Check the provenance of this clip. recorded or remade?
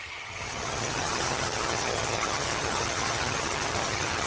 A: remade